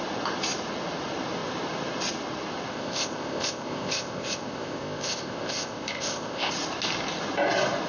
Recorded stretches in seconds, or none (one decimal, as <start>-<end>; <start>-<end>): 0.0-2.7; 6.5-7.9

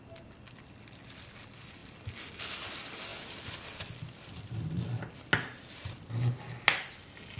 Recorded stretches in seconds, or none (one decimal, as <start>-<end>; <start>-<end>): 0.0-7.4

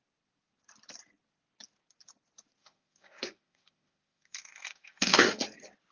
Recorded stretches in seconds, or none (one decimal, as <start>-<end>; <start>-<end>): 0.0-2.6; 5.4-5.9

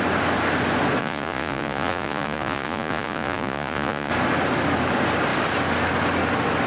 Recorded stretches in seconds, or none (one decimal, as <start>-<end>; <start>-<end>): 0.0-1.0; 4.1-6.7

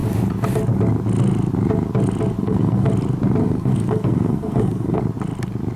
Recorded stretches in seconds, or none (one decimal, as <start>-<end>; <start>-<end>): 0.0-2.4; 2.9-3.4; 5.0-5.8

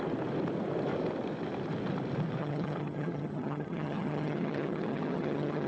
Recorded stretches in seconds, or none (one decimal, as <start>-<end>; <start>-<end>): 0.0-2.4

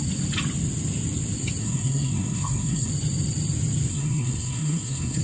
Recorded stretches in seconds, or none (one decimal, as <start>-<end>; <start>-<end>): 0.0-1.6; 2.9-3.9